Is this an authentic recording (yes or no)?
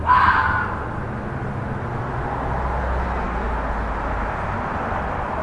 yes